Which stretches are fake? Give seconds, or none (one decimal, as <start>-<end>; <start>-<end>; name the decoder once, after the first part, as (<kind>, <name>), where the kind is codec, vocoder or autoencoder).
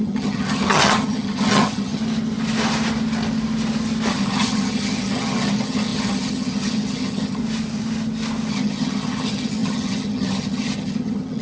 0.0-2.0 (vocoder, HiFi-GAN); 4.1-7.4; 8.5-11.4